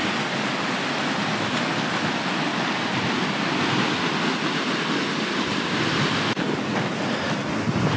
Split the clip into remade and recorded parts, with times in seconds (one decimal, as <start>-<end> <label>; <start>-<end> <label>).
0.0-8.0 recorded